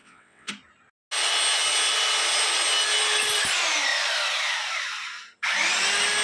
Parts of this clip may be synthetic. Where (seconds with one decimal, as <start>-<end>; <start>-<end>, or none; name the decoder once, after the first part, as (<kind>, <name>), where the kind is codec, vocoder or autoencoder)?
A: 0.0-0.5 (vocoder, WaveNeXt)